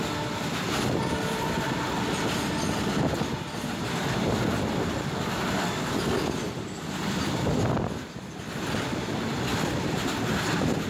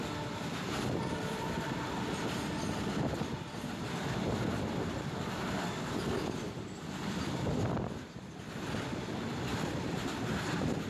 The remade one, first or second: second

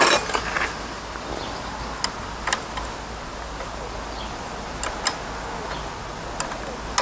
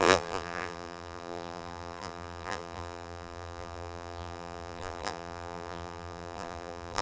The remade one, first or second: second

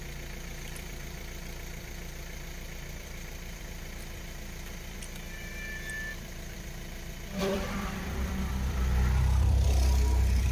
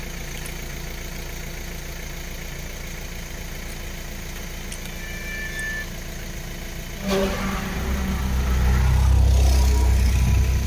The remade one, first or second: first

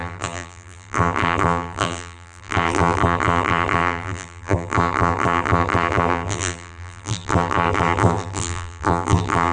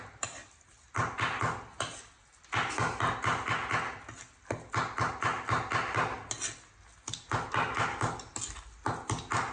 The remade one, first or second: first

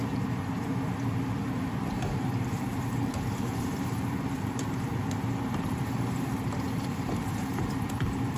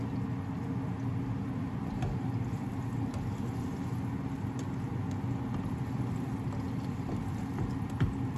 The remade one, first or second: first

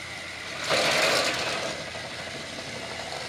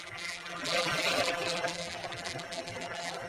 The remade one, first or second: second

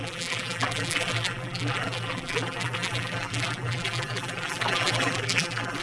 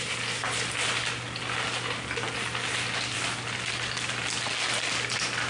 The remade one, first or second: first